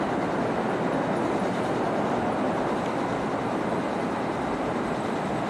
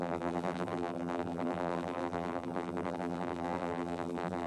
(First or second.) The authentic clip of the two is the first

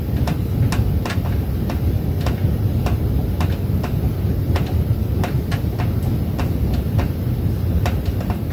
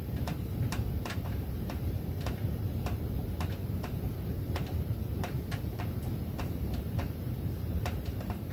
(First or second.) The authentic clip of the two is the first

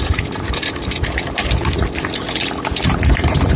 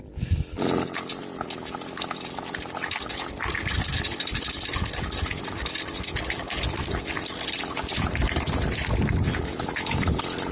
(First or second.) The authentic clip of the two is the second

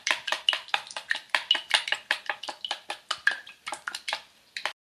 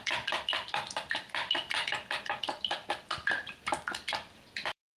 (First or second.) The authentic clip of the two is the first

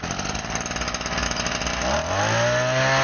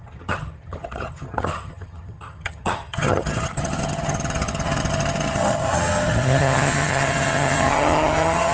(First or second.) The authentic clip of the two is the first